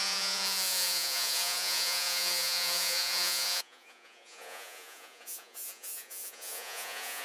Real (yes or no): no